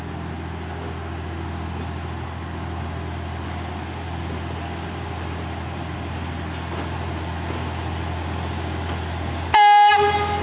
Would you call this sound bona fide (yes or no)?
yes